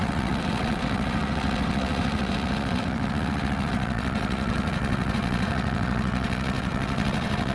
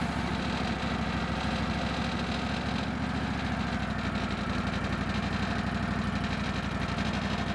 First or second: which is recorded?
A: second